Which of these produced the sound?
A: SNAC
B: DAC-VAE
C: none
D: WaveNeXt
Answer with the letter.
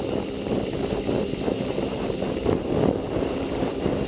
C